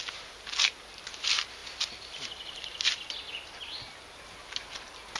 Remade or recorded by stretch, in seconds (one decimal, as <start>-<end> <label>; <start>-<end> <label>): 0.0-5.2 recorded